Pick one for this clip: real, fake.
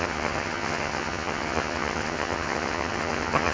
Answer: fake